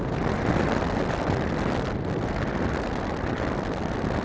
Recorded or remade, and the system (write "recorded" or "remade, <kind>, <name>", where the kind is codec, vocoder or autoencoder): recorded